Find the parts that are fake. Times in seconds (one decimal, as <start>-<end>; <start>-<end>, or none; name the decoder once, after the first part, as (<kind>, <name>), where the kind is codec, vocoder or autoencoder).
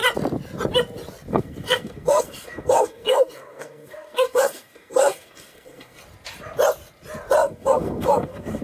1.3-6.0 (codec, SNAC); 7.4-8.6